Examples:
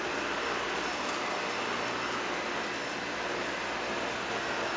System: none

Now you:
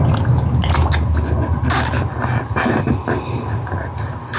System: none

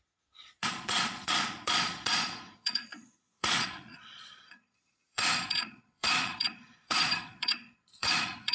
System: vocoder, Vocos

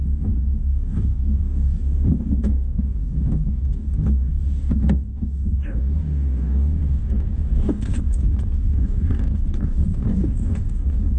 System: codec, DAC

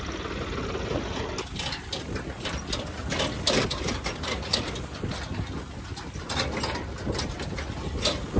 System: none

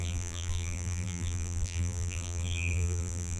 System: vocoder, BigVGAN v2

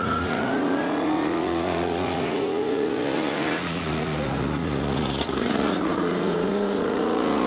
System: vocoder, Vocos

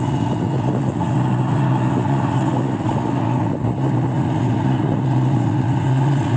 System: vocoder, Vocos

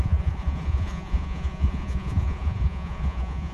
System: vocoder, Vocos